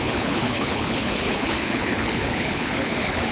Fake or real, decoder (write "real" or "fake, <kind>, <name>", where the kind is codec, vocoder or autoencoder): fake, codec, HILCodec